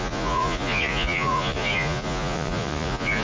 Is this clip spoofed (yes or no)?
yes